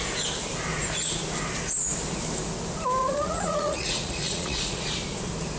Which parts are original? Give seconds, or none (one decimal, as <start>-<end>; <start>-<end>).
0.0-3.0; 4.8-5.6